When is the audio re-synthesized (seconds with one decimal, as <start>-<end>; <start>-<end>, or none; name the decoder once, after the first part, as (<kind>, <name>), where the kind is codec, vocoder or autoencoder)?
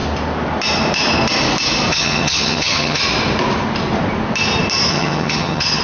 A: 1.9-3.0 (vocoder, HiFi-GAN); 4.9-5.8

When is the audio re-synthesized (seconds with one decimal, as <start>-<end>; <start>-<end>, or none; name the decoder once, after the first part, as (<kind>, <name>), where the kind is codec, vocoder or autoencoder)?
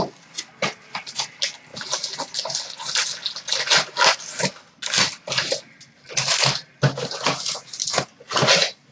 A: none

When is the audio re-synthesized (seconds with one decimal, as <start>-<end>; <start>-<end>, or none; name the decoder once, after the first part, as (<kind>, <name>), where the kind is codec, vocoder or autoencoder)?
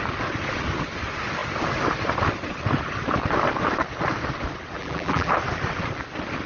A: 4.8-5.3 (vocoder, BigVGAN v2)